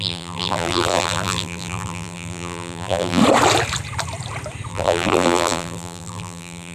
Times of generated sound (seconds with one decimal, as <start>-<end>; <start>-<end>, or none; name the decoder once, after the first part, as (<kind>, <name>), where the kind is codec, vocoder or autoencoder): 0.0-3.2 (vocoder, BigVGAN v2); 4.7-6.7